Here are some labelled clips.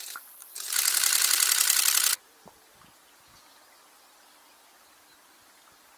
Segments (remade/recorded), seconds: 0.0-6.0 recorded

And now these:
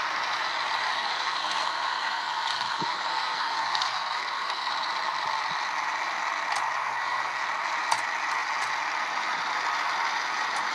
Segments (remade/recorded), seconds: 0.0-0.9 recorded; 0.9-4.7 remade; 4.7-6.8 recorded; 6.8-7.4 remade; 7.4-10.7 recorded

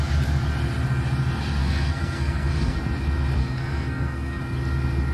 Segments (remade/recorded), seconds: 0.0-1.6 recorded; 1.6-2.8 remade; 2.8-3.4 recorded; 3.4-4.4 remade; 4.4-5.1 recorded

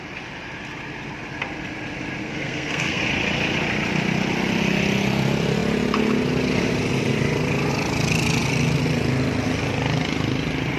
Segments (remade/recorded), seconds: 0.0-2.2 recorded; 2.2-3.0 remade; 3.0-10.8 recorded

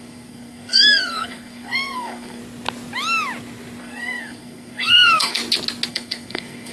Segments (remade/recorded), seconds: 0.0-2.4 remade; 2.4-3.8 recorded; 3.8-5.4 remade; 5.4-5.9 recorded; 5.9-6.7 remade